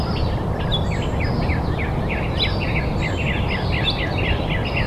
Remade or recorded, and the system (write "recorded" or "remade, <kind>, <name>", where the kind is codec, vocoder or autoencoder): recorded